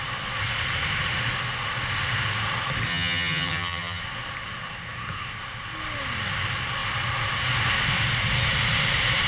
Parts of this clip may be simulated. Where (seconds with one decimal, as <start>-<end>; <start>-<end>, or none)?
2.9-4.0